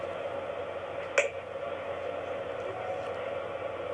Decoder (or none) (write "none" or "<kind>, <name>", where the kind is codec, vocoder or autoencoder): none